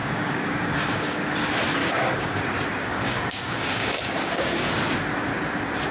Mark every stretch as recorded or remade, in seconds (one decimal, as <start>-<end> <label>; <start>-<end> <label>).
0.0-1.2 remade; 1.2-1.8 recorded; 1.8-2.4 remade; 2.4-2.9 recorded; 2.9-4.7 remade; 4.7-5.9 recorded